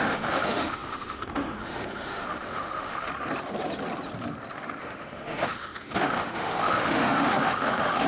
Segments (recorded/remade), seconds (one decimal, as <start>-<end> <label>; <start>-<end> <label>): 0.0-3.1 remade; 3.1-4.8 recorded; 4.8-8.1 remade